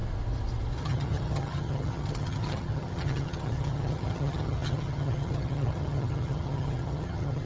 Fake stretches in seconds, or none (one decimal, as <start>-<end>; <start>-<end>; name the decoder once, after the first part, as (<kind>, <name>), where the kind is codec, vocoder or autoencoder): 0.8-7.5 (vocoder, HiFi-GAN)